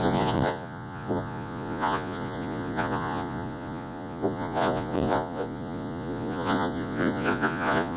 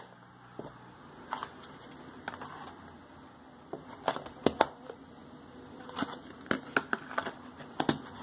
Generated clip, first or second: first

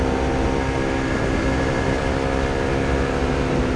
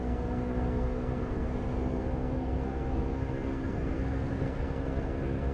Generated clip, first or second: second